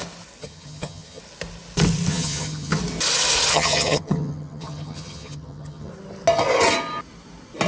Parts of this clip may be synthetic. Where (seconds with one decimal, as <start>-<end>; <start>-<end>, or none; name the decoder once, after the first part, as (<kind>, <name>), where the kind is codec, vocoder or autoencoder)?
0.4-1.2 (vocoder, HiFi-GAN); 2.1-2.8; 3.5-5.9